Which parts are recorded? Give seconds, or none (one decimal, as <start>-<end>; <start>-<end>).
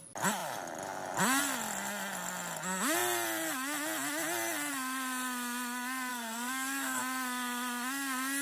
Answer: 0.0-6.1; 7.0-8.4